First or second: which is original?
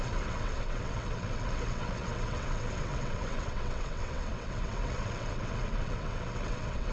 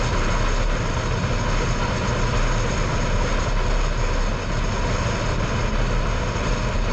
second